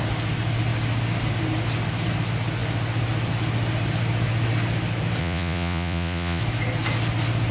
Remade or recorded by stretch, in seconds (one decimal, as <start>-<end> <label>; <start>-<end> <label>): 0.0-5.2 recorded; 5.2-6.4 remade; 6.4-7.5 recorded